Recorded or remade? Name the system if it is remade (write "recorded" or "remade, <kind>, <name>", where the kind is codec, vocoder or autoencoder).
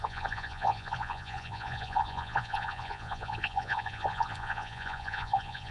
remade, vocoder, Vocos